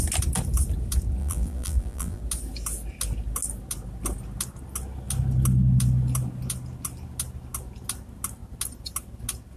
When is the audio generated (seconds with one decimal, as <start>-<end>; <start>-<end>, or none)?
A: 1.2-2.2